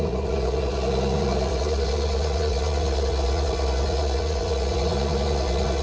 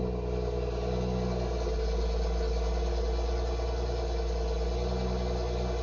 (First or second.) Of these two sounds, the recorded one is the second